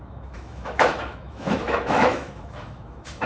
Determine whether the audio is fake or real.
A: fake